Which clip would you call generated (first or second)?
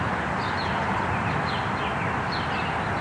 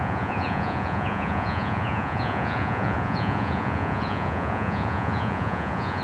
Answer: second